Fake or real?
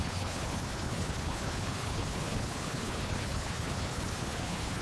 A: fake